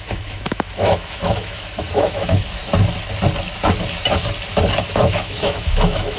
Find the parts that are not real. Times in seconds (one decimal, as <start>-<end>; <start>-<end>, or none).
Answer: 0.0-2.6; 4.8-6.2